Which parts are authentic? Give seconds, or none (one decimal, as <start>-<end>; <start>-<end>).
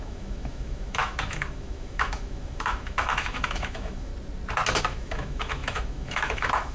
4.1-4.8